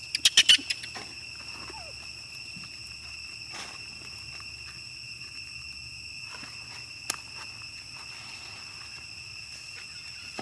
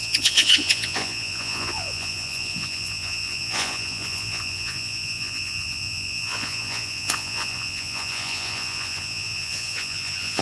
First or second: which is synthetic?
second